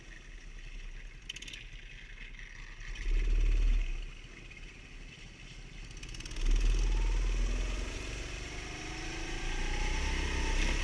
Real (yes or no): yes